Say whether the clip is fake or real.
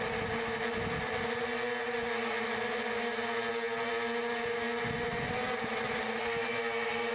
real